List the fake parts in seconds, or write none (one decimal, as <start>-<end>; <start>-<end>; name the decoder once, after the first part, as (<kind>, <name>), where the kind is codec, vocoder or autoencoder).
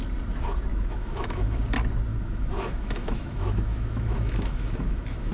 0.7-1.6 (autoencoder, DAC-VAE); 2.1-5.3